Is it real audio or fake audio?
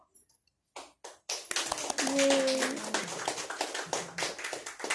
real